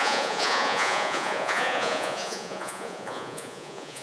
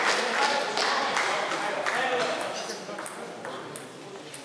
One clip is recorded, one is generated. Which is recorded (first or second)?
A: second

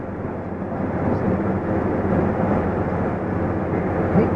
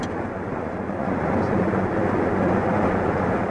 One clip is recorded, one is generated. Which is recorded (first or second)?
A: first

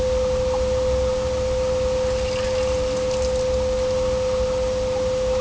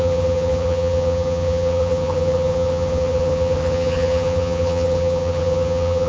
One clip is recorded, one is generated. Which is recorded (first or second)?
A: first